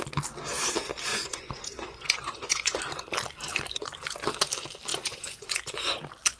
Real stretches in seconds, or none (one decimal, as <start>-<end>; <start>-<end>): 0.0-1.1; 2.8-4.9; 6.0-6.4